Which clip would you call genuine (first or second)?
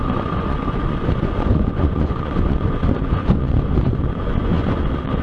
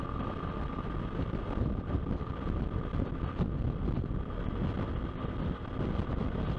second